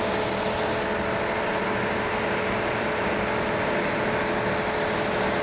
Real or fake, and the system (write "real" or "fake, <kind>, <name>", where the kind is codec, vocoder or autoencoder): real